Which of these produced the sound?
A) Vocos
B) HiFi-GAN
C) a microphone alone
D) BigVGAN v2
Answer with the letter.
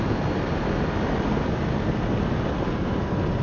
C